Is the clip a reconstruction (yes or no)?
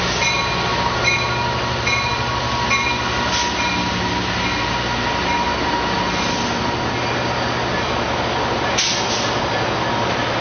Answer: no